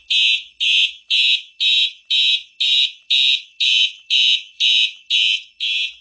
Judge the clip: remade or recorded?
recorded